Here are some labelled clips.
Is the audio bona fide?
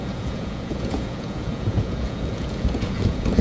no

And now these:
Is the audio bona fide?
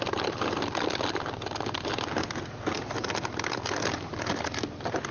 yes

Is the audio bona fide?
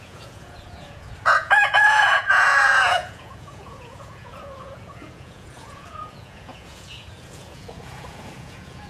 no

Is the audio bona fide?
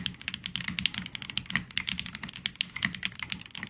yes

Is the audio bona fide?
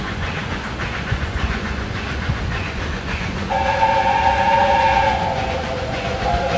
no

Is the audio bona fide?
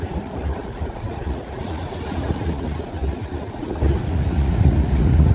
no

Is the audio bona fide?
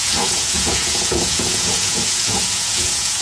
no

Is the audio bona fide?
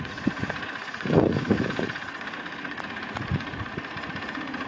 no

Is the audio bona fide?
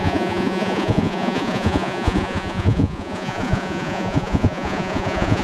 no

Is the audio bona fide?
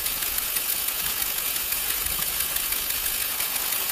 no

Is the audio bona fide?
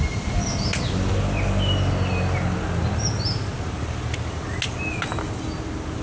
yes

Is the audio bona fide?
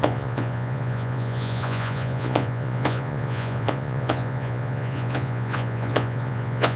no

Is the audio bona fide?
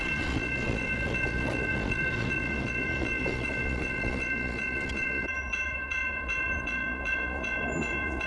no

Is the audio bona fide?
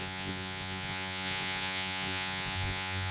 no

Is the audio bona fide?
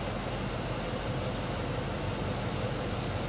yes